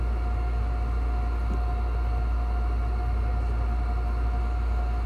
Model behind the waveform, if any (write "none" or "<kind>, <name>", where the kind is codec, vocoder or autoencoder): none